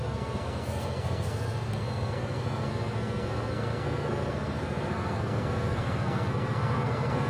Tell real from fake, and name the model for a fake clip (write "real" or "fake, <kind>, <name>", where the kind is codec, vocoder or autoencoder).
fake, codec, SNAC